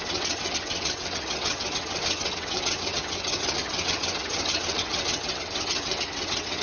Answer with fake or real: fake